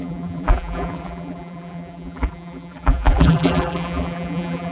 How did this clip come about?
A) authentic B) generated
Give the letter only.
B